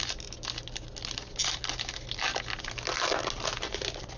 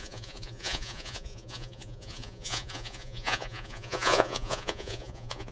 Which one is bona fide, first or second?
first